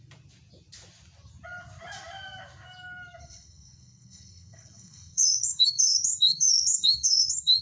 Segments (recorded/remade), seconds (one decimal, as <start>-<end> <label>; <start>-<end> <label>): 0.0-3.2 recorded; 3.2-7.6 remade